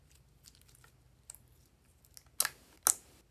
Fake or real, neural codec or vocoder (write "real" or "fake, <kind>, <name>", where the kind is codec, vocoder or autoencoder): real